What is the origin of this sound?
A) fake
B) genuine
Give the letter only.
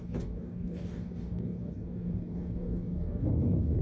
A